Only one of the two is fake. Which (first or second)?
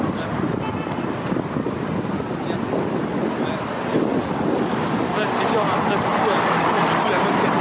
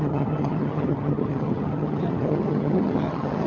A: second